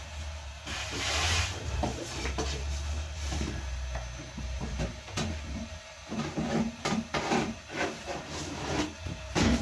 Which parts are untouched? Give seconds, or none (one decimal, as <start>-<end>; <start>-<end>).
none